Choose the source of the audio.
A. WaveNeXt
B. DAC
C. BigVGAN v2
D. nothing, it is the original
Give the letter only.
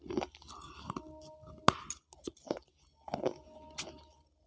D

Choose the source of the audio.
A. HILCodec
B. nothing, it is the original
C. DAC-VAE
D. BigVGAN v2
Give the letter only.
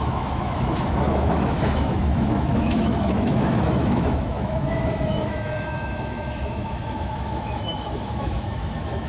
C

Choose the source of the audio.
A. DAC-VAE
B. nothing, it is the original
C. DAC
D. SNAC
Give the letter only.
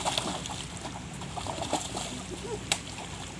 B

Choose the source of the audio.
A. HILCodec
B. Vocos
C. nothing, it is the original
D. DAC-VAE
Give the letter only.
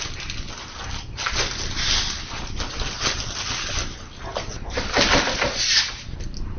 C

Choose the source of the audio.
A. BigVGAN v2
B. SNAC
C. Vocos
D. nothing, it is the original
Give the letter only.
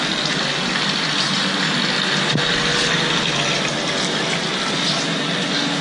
D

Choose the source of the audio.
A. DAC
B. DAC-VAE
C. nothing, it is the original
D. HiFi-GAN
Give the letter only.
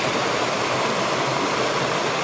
C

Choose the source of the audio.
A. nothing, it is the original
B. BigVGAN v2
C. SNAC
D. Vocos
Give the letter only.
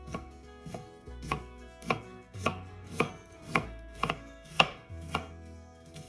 C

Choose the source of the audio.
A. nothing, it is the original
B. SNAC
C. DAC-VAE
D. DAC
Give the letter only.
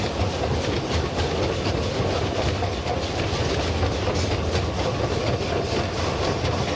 A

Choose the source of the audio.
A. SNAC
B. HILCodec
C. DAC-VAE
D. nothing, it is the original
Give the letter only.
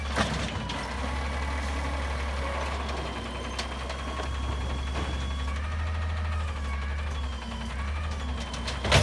D